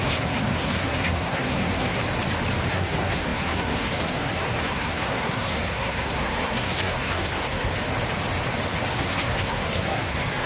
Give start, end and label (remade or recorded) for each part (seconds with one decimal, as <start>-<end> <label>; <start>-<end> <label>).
0.0-2.0 remade; 2.0-2.7 recorded; 2.7-7.7 remade; 7.7-8.9 recorded; 8.9-10.5 remade

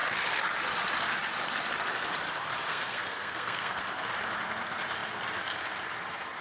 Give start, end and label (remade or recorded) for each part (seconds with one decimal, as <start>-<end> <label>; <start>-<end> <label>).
0.0-2.7 recorded; 2.7-3.8 remade; 3.8-6.4 recorded

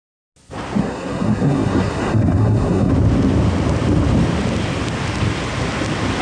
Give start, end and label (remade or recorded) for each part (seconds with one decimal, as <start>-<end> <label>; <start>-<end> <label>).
0.0-0.8 recorded; 0.8-2.9 remade; 2.9-6.2 recorded